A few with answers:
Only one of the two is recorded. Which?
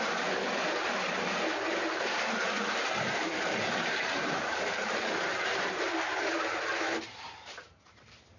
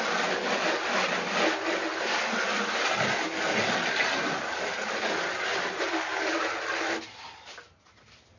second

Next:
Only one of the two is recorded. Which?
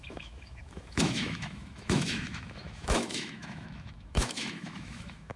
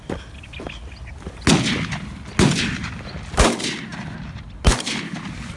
second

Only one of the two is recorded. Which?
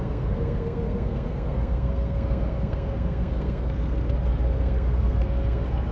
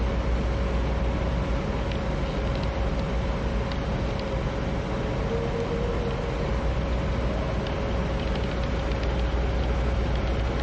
second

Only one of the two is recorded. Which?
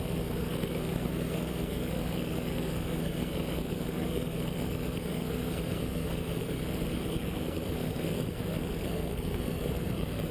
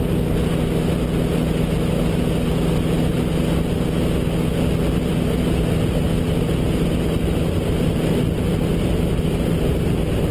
second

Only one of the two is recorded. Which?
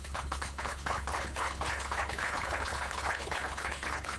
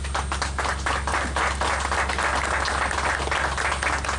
second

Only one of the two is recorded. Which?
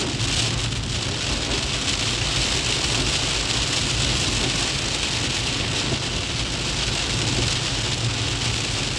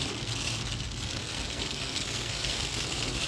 first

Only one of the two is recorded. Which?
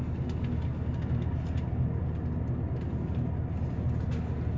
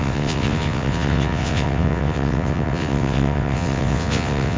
first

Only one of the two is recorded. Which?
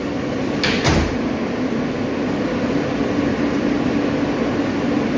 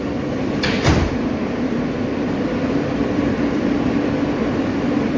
first